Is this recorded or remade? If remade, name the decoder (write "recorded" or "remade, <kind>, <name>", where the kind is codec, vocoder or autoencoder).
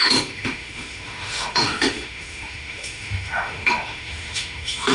remade, autoencoder, DAC-VAE